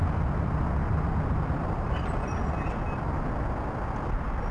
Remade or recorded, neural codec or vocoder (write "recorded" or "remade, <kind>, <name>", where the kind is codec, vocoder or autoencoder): recorded